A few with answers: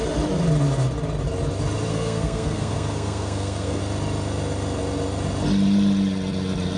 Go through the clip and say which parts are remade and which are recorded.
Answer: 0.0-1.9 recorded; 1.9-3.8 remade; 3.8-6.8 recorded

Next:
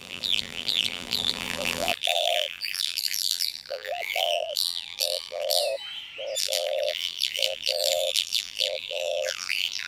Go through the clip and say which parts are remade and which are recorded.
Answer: 0.0-5.6 remade; 5.6-6.4 recorded; 6.4-9.9 remade